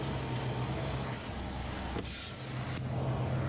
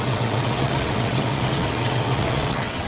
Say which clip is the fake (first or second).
second